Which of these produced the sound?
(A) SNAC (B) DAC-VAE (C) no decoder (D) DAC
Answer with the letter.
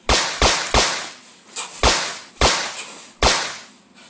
C